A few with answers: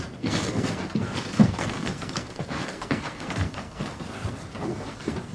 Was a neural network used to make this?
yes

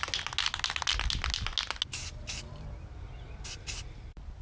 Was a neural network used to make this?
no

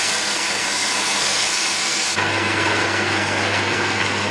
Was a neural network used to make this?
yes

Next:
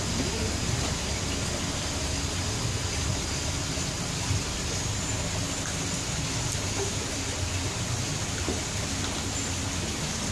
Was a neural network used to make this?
no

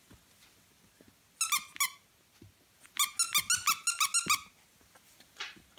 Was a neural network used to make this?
no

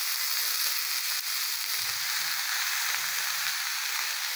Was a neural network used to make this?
no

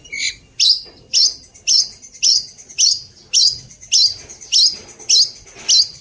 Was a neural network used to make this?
no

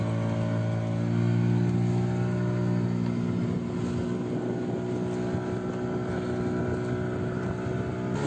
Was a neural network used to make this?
no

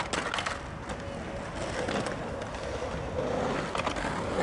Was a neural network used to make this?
no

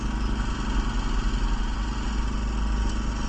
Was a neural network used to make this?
no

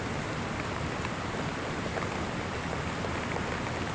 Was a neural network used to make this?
no